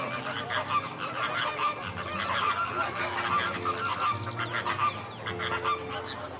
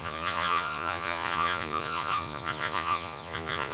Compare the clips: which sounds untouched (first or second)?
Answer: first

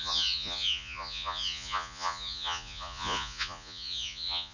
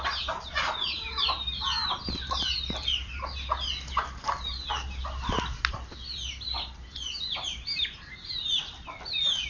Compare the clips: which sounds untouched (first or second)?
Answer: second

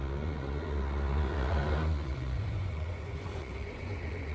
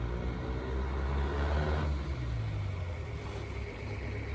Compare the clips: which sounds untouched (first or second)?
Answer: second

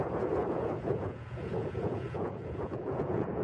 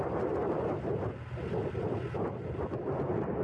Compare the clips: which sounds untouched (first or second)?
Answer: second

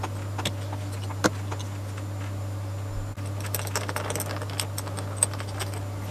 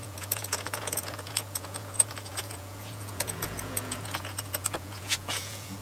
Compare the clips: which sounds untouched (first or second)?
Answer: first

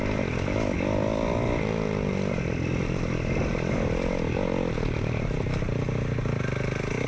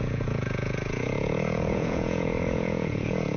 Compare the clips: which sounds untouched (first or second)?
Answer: first